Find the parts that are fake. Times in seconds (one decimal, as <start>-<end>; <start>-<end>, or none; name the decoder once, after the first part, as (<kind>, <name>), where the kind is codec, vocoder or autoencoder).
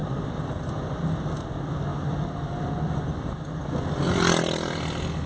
0.0-0.5 (vocoder, BigVGAN v2)